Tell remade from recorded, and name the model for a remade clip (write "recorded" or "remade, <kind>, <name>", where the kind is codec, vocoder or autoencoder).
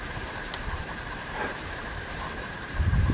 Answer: remade, vocoder, BigVGAN v2